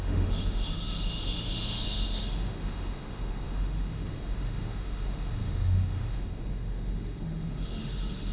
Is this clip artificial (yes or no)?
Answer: yes